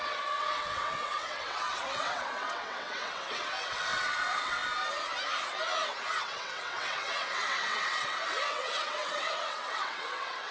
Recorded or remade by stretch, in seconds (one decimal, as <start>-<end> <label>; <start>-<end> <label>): 0.0-4.6 remade; 4.6-6.2 recorded; 6.2-10.5 remade